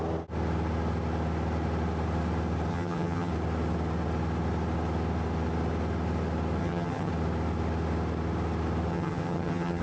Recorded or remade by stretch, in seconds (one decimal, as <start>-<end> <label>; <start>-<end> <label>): 0.0-2.7 recorded; 2.7-3.3 remade; 3.3-6.6 recorded; 6.6-7.1 remade; 7.1-8.9 recorded; 8.9-9.8 remade